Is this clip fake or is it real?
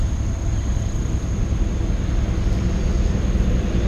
real